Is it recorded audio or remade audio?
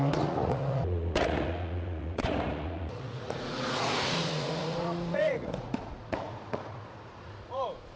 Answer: remade